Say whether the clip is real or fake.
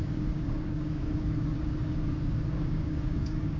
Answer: fake